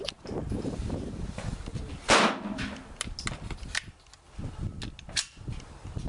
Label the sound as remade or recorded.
recorded